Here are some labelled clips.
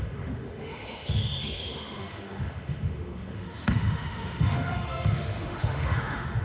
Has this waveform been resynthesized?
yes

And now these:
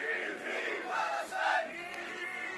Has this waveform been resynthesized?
yes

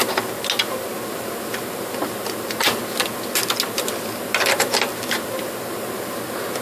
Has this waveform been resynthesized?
no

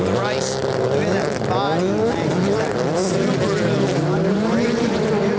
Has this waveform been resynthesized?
no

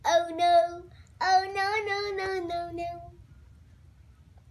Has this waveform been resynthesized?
no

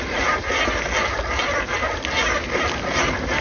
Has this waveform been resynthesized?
no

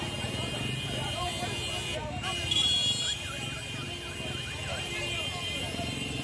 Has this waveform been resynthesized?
no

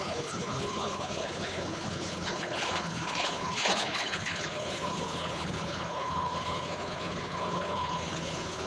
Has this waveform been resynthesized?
yes